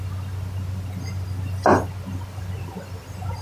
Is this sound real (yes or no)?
yes